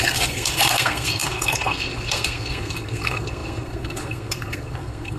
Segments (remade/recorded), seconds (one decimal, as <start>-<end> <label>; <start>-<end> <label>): 0.0-5.2 remade